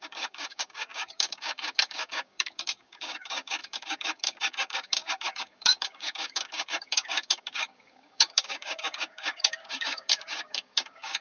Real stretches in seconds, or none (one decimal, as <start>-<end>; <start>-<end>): none